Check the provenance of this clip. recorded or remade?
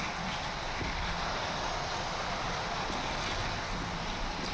recorded